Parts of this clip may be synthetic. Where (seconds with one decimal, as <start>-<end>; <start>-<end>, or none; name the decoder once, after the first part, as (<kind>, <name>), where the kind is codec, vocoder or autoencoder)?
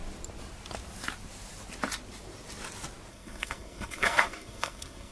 3.1-5.1 (codec, SNAC)